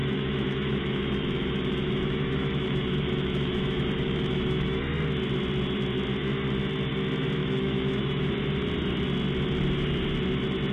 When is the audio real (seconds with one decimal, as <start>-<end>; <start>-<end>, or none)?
4.8-7.4; 8.3-10.7